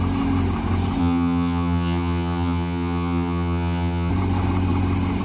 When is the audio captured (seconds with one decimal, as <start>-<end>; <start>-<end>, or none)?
0.0-1.0; 4.1-5.2